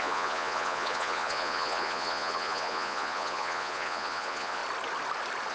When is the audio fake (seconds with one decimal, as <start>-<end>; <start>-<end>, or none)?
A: 0.0-4.6